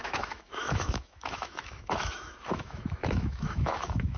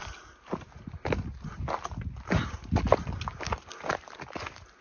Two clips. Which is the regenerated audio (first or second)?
first